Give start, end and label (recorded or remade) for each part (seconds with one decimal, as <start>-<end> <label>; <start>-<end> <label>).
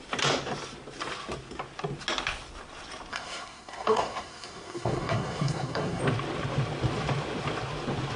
0.0-3.1 recorded; 3.1-6.0 remade; 6.0-8.2 recorded